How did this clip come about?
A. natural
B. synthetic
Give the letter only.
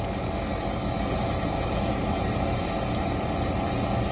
A